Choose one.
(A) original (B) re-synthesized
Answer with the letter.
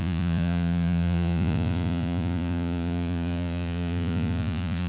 B